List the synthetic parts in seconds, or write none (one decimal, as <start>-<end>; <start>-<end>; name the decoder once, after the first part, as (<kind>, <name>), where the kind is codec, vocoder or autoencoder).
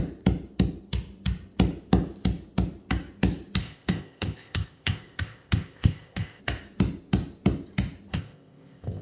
3.6-6.4 (codec, ZipCodec); 8.1-9.0